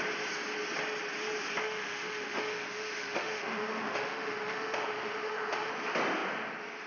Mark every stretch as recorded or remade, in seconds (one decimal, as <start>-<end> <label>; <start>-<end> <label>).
0.0-1.6 recorded; 1.6-5.7 remade; 5.7-6.9 recorded

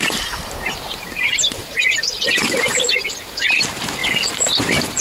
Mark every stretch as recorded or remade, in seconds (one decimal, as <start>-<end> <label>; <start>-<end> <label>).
0.0-4.0 remade; 4.0-4.6 recorded; 4.6-5.0 remade

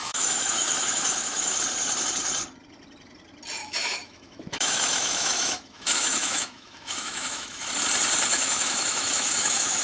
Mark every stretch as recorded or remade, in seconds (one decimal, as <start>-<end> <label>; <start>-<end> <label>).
0.0-1.6 remade; 1.6-3.6 recorded; 3.6-7.7 remade; 7.7-8.3 recorded; 8.3-9.8 remade

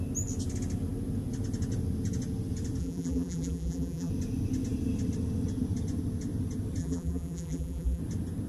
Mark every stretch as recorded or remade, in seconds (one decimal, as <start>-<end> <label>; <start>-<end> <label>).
0.0-2.8 recorded; 2.8-4.1 remade; 4.1-6.8 recorded; 6.8-8.0 remade; 8.0-8.5 recorded

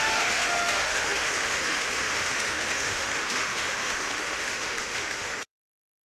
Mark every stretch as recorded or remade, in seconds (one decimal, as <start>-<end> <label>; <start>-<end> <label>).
0.0-6.0 remade